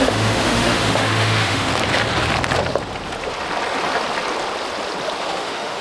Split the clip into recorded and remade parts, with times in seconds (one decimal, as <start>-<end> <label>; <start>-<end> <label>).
0.0-1.7 remade; 1.7-5.2 recorded; 5.2-5.8 remade